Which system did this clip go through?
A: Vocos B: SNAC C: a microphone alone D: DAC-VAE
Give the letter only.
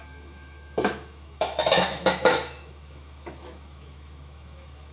D